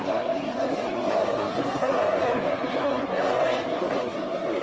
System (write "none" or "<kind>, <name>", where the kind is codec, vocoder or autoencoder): codec, SNAC